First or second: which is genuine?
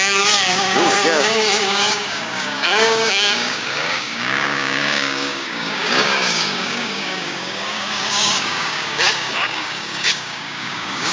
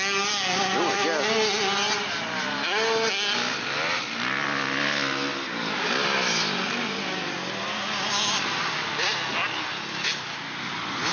second